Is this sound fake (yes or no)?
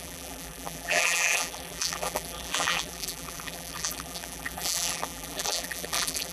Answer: yes